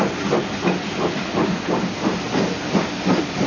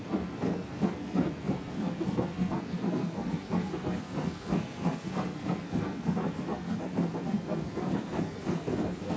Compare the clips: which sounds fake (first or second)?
second